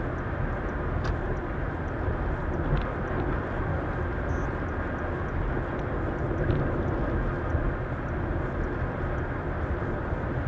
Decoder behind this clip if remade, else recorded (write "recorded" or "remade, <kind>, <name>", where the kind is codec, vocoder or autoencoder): recorded